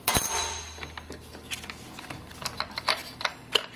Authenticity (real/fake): fake